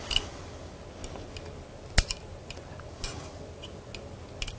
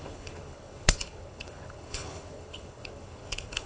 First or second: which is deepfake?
second